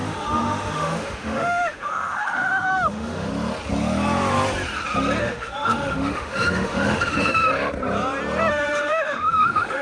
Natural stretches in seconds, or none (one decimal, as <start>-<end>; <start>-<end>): 3.3-5.2; 7.5-8.5